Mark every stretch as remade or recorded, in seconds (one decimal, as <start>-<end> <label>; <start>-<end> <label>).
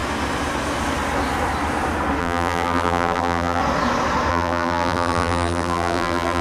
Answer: 0.0-2.2 recorded; 2.2-3.6 remade; 3.6-4.3 recorded; 4.3-6.4 remade